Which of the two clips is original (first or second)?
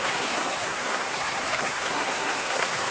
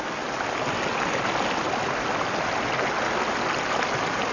second